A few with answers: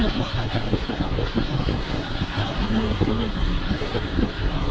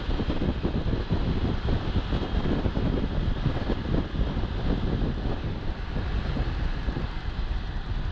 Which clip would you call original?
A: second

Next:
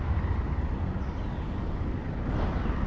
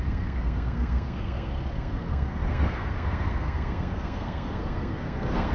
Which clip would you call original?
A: first